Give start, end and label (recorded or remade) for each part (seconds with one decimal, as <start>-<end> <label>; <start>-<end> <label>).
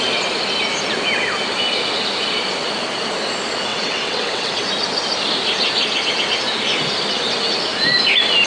0.0-3.7 recorded; 3.7-4.6 remade; 4.6-8.5 recorded